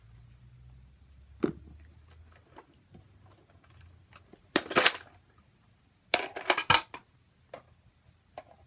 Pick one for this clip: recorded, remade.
recorded